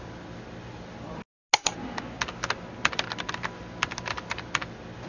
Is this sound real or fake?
real